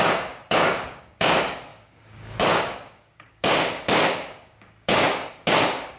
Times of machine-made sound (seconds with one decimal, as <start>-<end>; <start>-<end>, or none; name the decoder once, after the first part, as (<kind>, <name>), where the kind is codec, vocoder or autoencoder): 0.0-6.0 (codec, DAC)